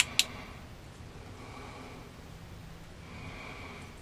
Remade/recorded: recorded